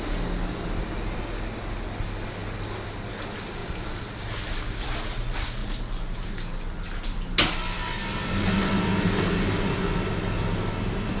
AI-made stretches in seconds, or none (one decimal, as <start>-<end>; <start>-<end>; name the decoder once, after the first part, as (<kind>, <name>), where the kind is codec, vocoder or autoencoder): none